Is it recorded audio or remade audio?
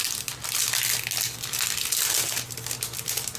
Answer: recorded